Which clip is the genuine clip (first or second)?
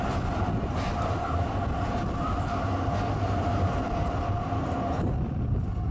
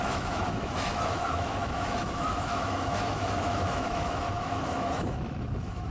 first